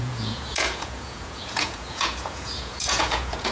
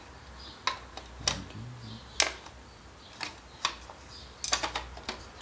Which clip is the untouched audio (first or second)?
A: second